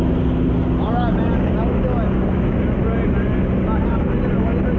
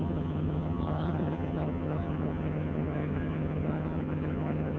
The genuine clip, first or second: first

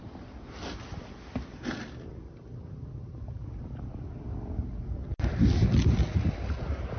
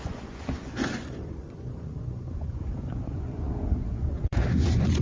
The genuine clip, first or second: first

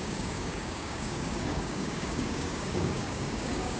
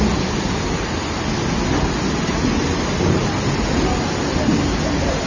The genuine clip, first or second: second